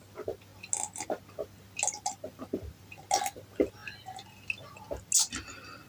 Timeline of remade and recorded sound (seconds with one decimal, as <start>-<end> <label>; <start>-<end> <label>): 0.0-5.9 recorded